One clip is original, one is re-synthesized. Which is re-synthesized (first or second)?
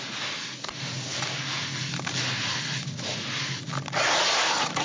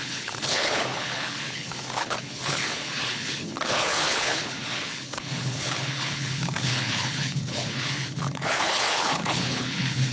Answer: second